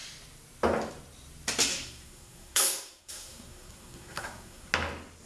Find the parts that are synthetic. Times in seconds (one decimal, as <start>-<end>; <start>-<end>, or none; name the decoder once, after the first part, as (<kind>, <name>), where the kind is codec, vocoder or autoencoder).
1.7-4.7 (codec, SNAC)